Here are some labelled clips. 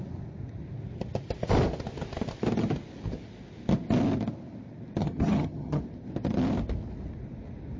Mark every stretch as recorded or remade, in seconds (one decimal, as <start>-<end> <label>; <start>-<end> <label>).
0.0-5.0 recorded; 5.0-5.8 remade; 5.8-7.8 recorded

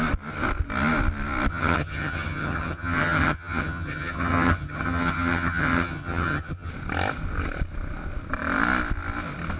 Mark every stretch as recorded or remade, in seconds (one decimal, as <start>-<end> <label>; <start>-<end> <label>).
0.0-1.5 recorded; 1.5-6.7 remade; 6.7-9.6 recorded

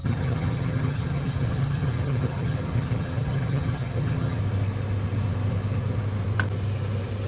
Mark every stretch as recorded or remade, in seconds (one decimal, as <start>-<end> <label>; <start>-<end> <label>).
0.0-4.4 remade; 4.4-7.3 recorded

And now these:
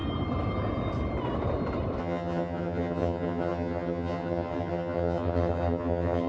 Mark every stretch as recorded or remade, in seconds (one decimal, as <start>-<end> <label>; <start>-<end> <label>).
0.0-2.0 recorded; 2.0-6.3 remade

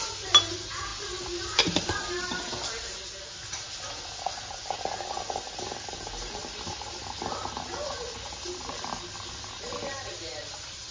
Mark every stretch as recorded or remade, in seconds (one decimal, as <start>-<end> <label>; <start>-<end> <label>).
0.0-10.9 recorded

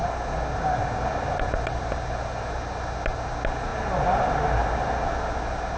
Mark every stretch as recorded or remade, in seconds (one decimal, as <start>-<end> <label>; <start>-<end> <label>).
0.0-5.8 recorded